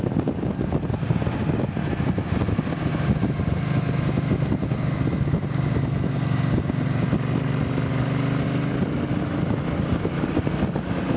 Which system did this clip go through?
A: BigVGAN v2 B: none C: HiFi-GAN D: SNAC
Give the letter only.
B